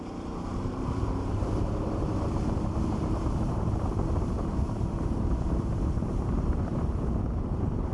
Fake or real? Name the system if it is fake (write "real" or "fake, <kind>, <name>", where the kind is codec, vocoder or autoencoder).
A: fake, vocoder, BigVGAN v2